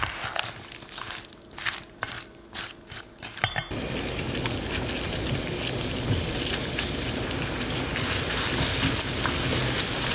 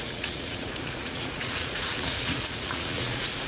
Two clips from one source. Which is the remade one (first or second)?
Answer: second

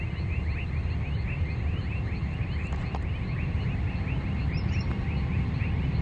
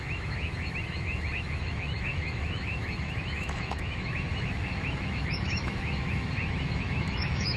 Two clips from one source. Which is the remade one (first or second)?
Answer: second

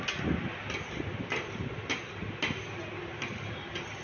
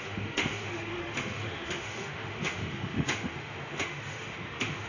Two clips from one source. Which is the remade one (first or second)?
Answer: second